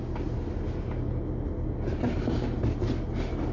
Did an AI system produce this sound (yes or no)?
no